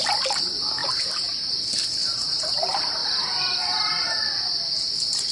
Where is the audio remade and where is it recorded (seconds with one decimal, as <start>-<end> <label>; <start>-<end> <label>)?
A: 0.0-0.8 recorded; 0.8-1.6 remade; 1.6-2.0 recorded; 2.0-2.5 remade; 2.5-3.0 recorded; 3.0-4.4 remade; 4.4-5.3 recorded